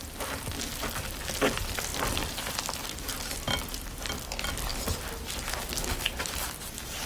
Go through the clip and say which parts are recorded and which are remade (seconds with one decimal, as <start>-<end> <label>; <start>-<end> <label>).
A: 0.0-7.1 recorded

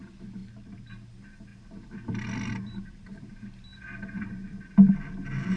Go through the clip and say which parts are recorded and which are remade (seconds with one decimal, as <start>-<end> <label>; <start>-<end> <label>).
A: 0.0-5.6 recorded